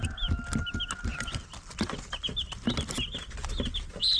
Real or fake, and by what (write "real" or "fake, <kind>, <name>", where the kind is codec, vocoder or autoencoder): real